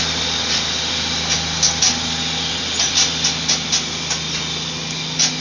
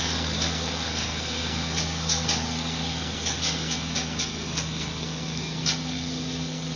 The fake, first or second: second